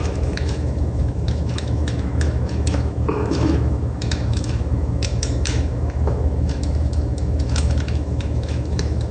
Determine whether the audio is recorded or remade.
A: remade